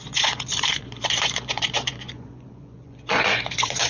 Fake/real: fake